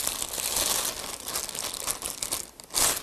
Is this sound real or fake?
real